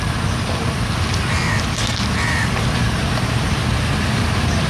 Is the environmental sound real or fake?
real